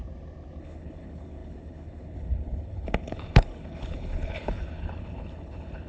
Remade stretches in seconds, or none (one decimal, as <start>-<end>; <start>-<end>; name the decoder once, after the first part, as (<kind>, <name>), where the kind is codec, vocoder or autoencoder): 0.6-5.9 (codec, HILCodec)